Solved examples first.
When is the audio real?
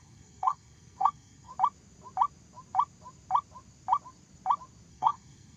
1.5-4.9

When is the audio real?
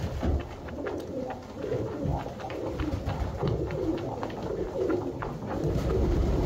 0.0-6.5